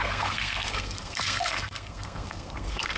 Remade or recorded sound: remade